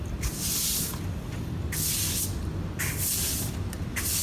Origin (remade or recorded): recorded